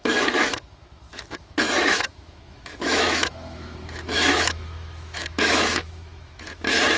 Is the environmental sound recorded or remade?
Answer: remade